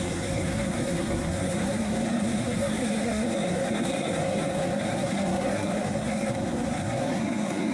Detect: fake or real fake